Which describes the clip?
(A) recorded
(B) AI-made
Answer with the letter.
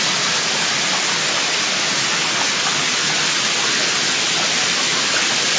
A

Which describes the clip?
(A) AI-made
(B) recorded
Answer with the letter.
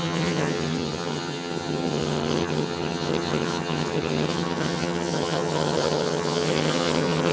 A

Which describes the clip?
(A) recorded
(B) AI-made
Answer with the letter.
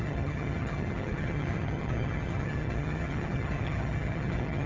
B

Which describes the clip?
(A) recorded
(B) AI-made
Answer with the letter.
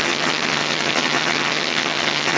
B